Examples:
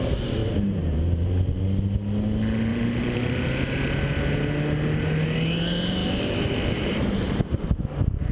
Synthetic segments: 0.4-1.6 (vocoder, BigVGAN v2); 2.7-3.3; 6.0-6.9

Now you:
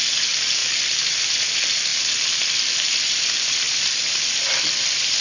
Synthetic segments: 0.6-1.2 (vocoder, BigVGAN v2)

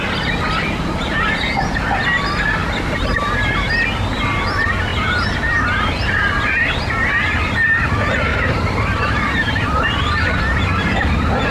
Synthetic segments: 8.3-10.4 (vocoder, BigVGAN v2)

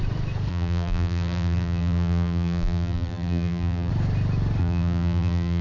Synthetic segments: 0.5-3.9 (vocoder, BigVGAN v2); 4.6-5.6